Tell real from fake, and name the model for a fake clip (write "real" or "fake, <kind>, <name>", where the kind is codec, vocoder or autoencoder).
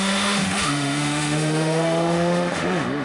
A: fake, autoencoder, DAC-VAE